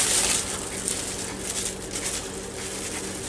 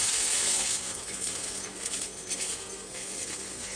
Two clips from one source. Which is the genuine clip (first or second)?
first